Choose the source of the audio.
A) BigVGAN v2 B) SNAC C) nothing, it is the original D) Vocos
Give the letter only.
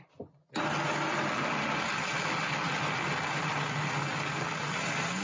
C